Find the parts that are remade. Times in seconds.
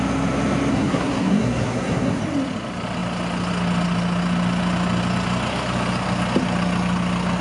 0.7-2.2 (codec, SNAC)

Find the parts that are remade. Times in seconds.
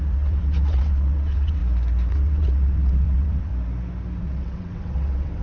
0.0-1.6 (vocoder, WaveNeXt); 2.1-3.5; 4.2-5.4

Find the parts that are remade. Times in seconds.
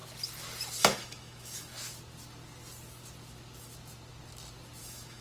0.8-1.7 (autoencoder, DAC-VAE); 4.8-5.2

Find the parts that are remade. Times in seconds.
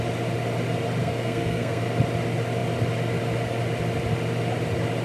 1.0-1.8 (codec, SNAC)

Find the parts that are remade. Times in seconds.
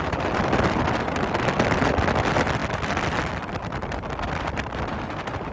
none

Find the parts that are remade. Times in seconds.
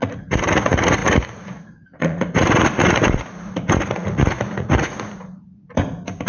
0.0-6.3 (vocoder, Vocos)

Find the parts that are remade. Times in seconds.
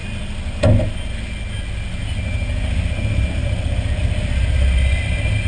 none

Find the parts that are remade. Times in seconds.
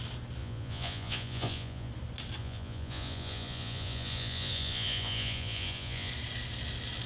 0.4-1.9 (vocoder, Vocos); 2.4-6.1